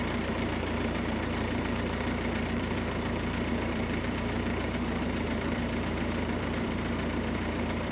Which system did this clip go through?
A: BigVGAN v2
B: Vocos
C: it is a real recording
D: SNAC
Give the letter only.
A